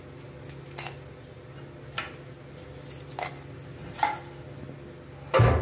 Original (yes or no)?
yes